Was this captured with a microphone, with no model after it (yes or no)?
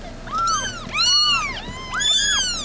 yes